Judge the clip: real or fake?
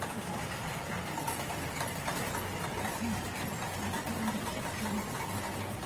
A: real